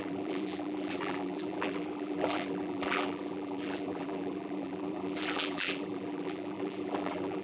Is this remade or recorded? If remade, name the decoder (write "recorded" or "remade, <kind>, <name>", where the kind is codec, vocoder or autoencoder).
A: remade, vocoder, BigVGAN v2